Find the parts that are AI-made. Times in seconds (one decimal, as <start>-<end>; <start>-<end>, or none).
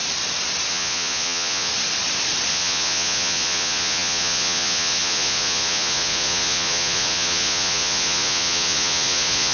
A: 0.7-1.7; 2.5-9.5